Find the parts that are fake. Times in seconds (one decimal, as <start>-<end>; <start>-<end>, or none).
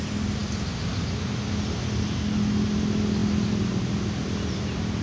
none